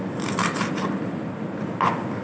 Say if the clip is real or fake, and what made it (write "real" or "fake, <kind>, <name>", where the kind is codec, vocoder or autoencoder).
real